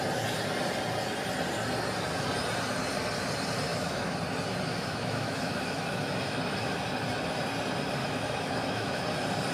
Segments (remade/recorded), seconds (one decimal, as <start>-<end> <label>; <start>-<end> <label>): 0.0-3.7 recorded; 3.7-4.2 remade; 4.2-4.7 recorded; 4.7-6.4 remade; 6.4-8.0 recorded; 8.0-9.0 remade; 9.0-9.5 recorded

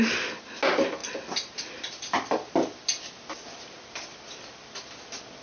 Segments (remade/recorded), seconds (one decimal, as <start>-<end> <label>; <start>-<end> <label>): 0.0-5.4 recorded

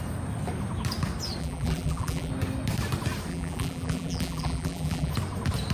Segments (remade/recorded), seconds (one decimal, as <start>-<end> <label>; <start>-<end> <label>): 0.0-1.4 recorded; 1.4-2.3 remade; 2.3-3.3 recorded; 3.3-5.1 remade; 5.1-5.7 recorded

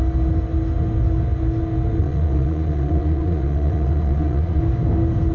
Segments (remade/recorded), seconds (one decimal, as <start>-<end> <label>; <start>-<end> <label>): 0.0-2.0 recorded; 2.0-4.6 remade; 4.6-5.3 recorded

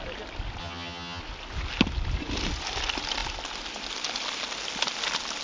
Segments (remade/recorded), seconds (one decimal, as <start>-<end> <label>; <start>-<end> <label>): 0.0-0.6 recorded; 0.6-1.2 remade; 1.2-5.4 recorded